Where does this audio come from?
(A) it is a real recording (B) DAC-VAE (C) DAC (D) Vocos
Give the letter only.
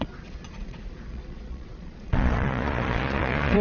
D